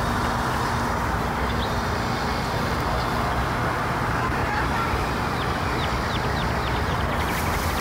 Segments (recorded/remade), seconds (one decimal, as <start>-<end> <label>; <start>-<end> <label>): 0.0-7.8 recorded